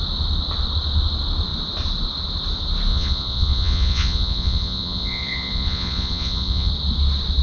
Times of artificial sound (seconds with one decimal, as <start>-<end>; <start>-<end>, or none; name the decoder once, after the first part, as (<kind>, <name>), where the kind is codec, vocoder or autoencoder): 2.9-6.7 (vocoder, Vocos)